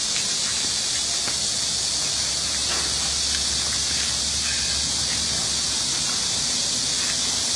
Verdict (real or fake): real